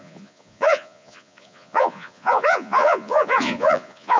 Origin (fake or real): fake